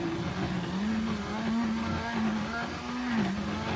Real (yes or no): yes